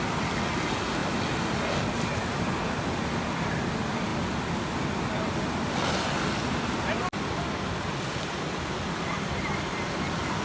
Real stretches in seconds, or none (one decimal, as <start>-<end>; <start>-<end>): 0.0-10.4